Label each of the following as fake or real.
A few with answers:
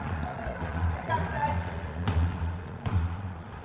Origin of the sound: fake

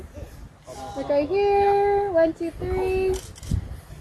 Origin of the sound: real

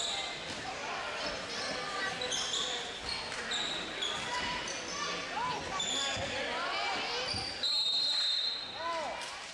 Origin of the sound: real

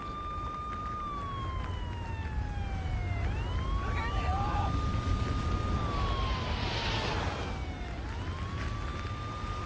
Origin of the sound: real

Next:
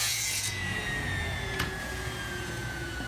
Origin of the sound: fake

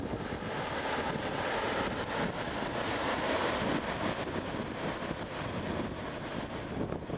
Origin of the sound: real